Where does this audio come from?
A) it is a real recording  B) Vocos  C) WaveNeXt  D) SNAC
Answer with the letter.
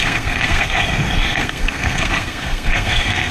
D